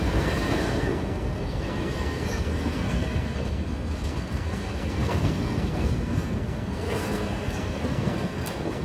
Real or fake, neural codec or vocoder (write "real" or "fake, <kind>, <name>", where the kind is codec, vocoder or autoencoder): fake, codec, SNAC